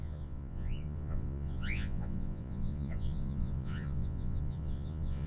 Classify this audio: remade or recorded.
remade